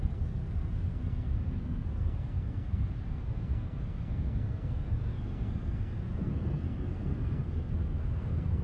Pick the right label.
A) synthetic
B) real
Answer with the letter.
A